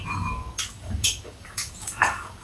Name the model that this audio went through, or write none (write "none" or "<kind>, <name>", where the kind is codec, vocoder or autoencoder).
codec, DAC